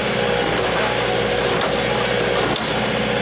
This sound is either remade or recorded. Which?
recorded